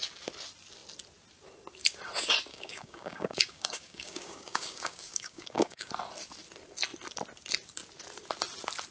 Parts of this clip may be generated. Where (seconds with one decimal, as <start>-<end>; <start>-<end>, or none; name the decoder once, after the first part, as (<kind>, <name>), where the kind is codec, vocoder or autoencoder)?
2.5-5.9 (codec, DAC)